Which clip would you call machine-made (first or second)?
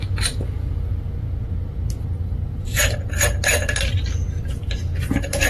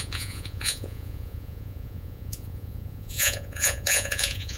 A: second